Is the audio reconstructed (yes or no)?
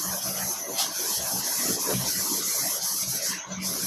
no